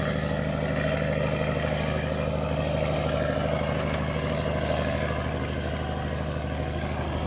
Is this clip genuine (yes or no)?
yes